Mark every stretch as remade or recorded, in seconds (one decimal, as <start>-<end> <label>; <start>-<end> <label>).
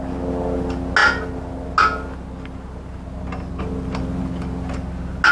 0.0-5.3 recorded